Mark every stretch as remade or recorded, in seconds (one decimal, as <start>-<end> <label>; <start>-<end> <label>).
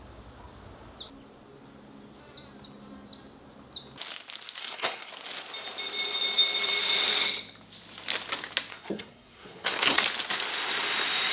0.0-4.6 recorded; 4.6-5.1 remade; 5.1-8.7 recorded; 8.7-10.0 remade; 10.0-11.3 recorded